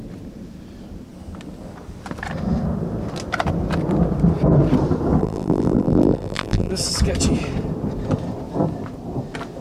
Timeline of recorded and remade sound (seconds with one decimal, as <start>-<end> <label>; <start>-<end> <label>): 0.0-5.2 recorded; 5.2-6.7 remade; 6.7-9.6 recorded